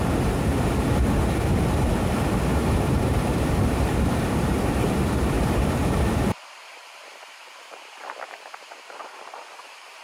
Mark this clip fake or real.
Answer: fake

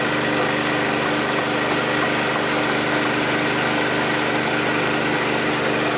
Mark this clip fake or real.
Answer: real